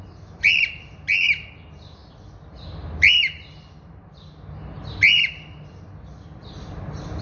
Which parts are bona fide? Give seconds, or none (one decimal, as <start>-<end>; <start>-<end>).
0.0-7.2